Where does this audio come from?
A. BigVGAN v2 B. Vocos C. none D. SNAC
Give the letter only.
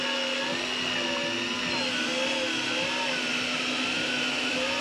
C